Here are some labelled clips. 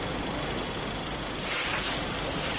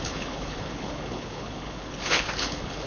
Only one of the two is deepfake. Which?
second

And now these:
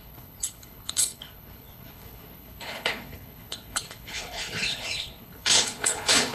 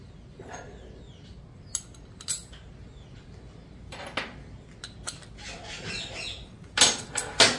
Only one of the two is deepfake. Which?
first